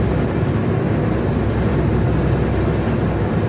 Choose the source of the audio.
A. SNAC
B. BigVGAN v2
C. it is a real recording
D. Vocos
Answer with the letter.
C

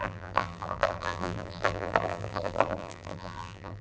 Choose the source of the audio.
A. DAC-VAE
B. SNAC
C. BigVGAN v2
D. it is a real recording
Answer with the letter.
C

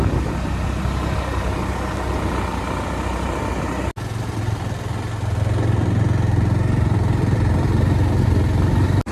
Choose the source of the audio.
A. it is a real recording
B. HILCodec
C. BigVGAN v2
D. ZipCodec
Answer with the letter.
A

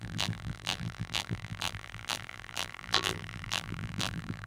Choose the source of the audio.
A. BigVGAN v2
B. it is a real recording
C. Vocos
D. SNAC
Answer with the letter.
A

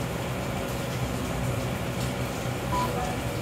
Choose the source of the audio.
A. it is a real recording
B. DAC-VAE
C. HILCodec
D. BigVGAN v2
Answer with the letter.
A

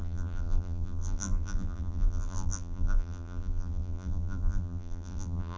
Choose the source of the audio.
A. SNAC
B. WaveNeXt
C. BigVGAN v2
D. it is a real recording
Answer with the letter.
C